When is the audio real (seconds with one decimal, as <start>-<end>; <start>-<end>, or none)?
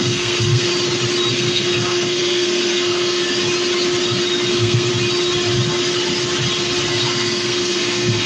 0.7-1.3; 3.2-4.5; 4.9-6.9